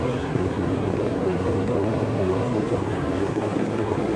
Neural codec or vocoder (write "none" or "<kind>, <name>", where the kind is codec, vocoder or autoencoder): codec, SNAC